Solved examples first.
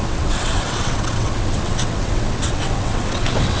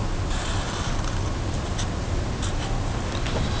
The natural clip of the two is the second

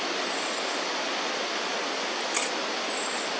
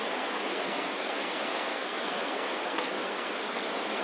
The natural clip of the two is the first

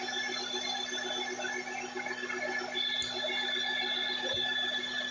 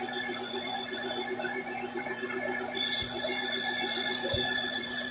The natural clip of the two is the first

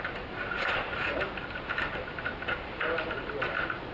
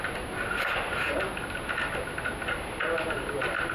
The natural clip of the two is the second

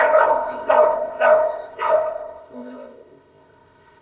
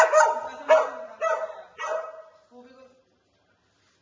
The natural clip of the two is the second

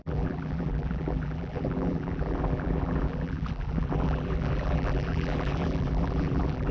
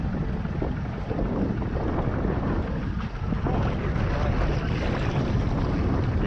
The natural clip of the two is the second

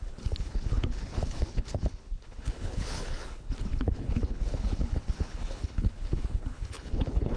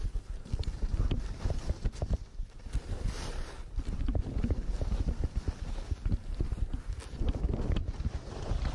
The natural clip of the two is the second